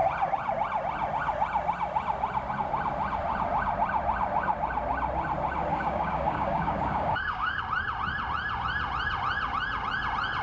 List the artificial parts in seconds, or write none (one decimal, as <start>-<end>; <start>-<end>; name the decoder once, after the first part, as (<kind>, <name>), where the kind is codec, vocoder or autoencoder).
5.7-7.6 (codec, DAC)